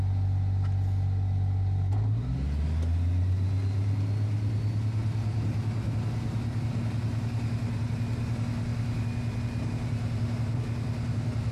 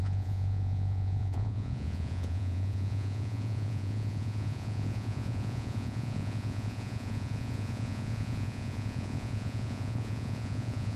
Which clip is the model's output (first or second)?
second